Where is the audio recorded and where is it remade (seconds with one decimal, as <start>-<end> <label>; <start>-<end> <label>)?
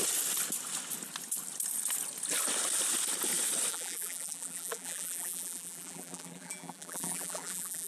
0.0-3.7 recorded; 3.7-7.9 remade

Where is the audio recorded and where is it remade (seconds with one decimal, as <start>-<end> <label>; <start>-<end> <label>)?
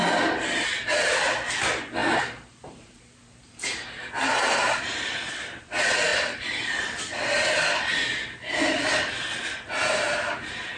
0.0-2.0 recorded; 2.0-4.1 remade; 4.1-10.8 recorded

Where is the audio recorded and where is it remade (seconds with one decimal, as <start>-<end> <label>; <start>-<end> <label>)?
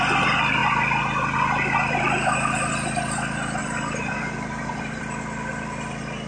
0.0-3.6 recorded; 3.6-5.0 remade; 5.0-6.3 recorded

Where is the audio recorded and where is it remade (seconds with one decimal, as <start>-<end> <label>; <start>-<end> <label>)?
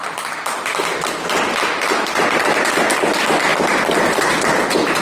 0.0-5.0 recorded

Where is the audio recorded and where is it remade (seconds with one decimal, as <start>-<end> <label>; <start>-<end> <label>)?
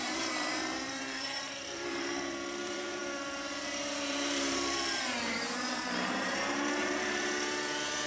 0.0-8.1 remade